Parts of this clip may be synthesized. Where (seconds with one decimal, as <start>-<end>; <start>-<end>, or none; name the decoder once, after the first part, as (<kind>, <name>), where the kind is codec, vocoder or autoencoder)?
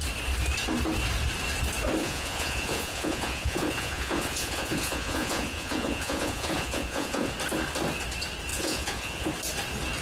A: 2.0-7.3 (vocoder, Vocos); 8.5-9.3